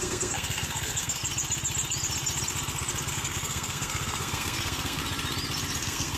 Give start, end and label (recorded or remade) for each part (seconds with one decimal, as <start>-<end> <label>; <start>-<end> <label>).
0.0-1.2 remade; 1.2-3.1 recorded; 3.1-5.0 remade; 5.0-5.8 recorded; 5.8-6.2 remade